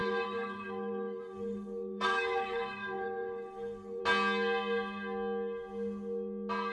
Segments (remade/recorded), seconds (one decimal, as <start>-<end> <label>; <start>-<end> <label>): 0.0-4.0 remade; 4.0-6.7 recorded

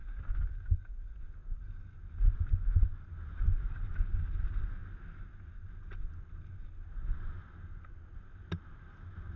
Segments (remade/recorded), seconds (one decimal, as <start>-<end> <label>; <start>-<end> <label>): 0.0-9.4 recorded

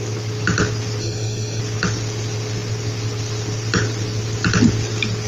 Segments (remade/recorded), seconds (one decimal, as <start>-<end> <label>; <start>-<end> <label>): 0.0-1.0 recorded; 1.0-1.6 remade; 1.6-5.3 recorded